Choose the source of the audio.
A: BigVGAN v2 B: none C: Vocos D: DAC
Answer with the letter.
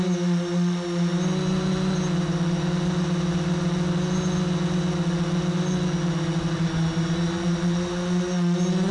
B